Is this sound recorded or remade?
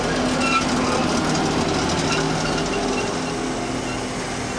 recorded